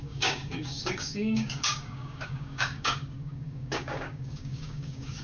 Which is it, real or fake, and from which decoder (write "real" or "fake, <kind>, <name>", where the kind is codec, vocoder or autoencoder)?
fake, codec, DAC